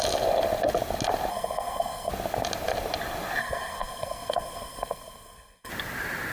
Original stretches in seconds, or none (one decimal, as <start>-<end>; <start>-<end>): 0.0-1.3; 2.1-3.4; 5.7-6.3